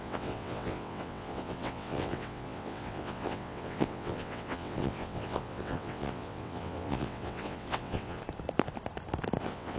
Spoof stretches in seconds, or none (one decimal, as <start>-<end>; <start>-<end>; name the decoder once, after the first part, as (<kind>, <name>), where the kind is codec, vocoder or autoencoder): 0.0-8.2 (vocoder, WaveNeXt); 9.4-9.8